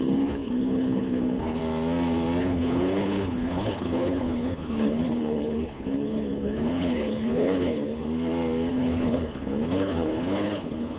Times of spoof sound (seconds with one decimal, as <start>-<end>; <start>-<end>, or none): 0.0-1.6; 2.4-8.0; 8.7-11.0

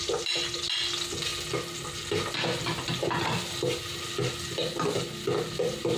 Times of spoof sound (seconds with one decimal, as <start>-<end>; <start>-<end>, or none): none

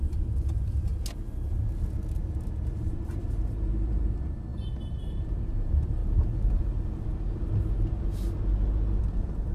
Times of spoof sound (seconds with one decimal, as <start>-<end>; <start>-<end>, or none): 0.0-0.9; 2.3-6.0; 9.0-9.5

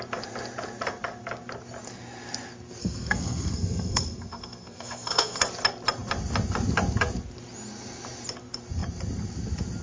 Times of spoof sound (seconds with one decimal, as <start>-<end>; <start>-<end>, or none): 2.8-5.4

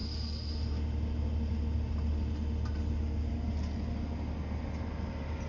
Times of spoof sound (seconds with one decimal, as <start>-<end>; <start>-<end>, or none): none

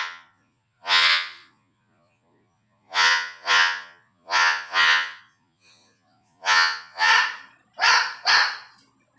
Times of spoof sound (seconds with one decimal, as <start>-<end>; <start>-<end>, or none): 0.0-7.1